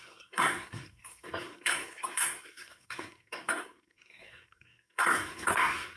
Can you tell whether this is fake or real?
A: fake